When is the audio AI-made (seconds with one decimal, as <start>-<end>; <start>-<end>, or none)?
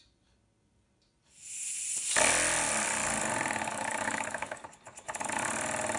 3.7-4.7